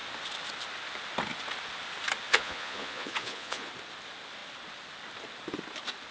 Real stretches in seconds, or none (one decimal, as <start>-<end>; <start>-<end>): 0.0-2.3; 3.7-6.1